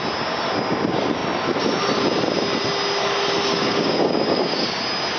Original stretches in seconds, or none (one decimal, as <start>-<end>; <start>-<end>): 0.0-3.5; 4.8-5.2